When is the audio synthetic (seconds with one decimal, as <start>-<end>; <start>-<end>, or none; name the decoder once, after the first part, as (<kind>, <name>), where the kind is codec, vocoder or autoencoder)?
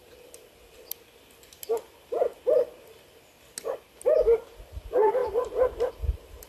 none